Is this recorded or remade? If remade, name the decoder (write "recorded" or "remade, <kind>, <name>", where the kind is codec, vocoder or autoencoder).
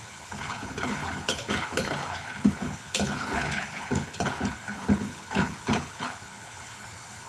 remade, codec, HILCodec